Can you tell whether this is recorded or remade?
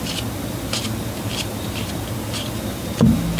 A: recorded